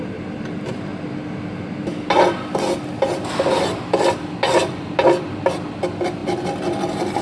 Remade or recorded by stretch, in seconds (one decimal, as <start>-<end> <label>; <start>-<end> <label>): 0.0-7.2 recorded